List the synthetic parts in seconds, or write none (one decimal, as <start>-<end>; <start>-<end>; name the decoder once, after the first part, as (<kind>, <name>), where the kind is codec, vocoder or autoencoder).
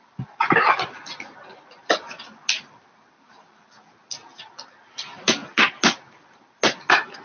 none